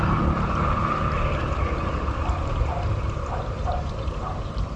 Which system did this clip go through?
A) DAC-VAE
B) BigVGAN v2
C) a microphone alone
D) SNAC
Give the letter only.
B